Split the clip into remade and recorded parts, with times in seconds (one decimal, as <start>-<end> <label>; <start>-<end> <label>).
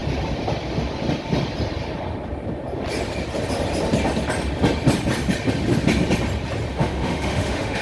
0.0-6.7 recorded; 6.7-7.8 remade